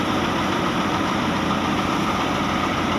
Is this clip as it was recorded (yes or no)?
no